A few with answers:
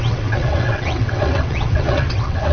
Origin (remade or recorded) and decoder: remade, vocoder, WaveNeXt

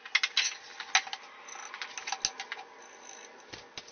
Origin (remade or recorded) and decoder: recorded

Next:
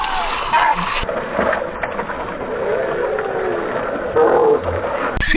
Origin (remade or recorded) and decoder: recorded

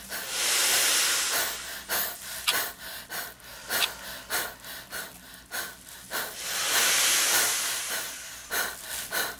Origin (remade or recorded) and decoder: recorded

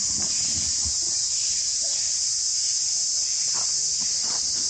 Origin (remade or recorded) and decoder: recorded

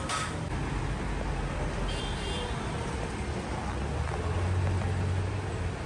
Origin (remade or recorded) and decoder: recorded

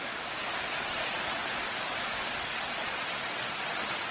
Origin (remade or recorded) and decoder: recorded